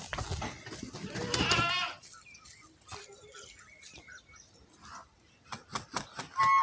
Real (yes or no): yes